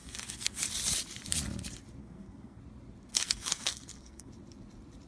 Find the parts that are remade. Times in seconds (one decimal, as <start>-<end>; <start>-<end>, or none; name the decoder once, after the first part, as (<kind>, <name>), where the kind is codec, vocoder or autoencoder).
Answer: 0.0-0.6 (codec, SNAC); 2.0-2.6; 3.1-4.3